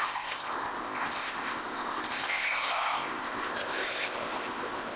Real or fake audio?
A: fake